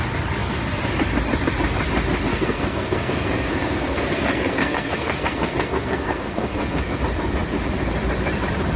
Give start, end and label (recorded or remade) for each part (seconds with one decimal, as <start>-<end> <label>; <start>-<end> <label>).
0.0-2.3 recorded; 2.3-7.0 remade; 7.0-8.8 recorded